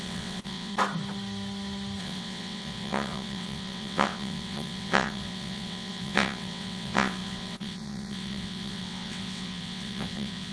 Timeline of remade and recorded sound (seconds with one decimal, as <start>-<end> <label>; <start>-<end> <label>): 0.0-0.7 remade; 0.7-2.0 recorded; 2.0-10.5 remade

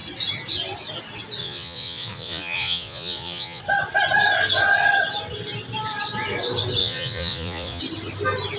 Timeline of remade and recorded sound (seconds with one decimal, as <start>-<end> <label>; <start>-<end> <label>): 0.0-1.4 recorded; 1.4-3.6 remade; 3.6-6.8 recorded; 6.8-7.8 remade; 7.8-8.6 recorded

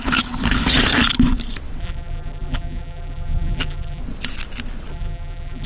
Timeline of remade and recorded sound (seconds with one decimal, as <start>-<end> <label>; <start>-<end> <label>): 0.0-1.8 recorded; 1.8-4.0 remade; 4.0-4.9 recorded; 4.9-5.7 remade